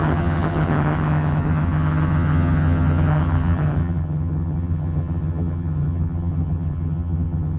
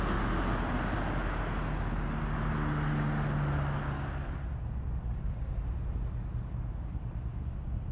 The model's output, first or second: first